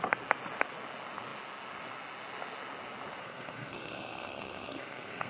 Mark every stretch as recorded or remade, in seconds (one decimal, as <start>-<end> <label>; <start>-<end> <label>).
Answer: 0.0-3.2 recorded; 3.2-5.3 remade